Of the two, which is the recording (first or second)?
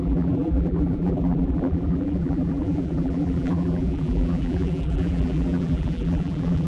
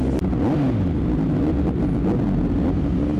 second